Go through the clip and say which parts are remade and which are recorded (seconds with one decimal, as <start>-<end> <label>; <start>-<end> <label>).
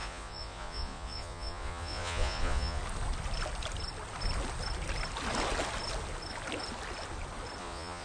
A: 0.0-2.8 remade; 2.8-7.6 recorded; 7.6-8.0 remade